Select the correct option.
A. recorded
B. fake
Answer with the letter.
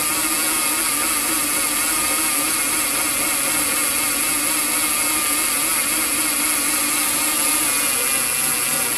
A